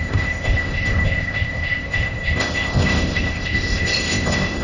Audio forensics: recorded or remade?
remade